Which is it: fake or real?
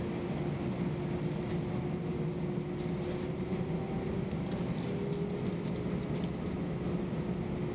real